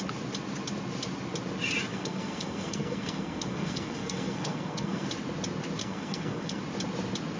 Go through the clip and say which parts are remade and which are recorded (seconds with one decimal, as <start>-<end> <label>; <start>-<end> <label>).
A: 0.0-1.9 recorded; 1.9-5.1 remade; 5.1-5.8 recorded; 5.8-6.6 remade; 6.6-7.4 recorded

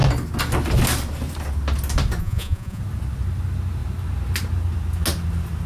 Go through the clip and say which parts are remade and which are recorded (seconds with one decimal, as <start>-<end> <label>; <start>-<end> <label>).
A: 0.0-2.2 recorded; 2.2-2.8 remade; 2.8-5.7 recorded